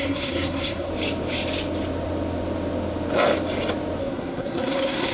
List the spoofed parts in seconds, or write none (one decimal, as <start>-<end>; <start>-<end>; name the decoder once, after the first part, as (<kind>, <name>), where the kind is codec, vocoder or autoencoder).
0.0-0.9 (codec, SNAC); 4.0-5.1